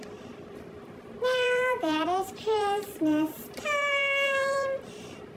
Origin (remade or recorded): remade